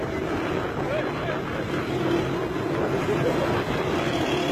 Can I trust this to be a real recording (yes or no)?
yes